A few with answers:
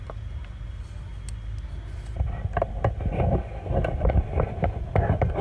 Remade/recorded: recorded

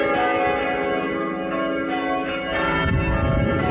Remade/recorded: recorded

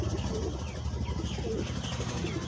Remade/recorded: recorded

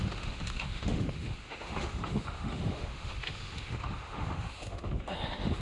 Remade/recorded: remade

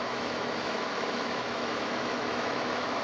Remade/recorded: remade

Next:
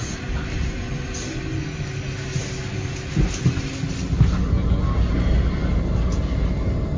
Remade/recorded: recorded